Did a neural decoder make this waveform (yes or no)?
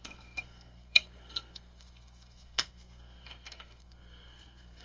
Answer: yes